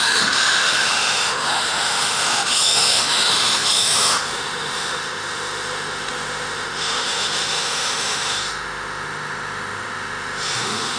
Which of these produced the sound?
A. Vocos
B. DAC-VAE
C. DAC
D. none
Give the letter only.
B